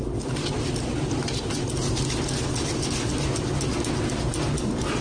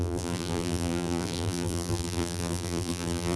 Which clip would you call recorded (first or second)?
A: first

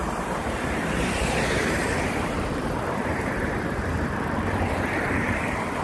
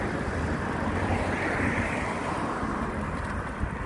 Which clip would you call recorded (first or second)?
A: second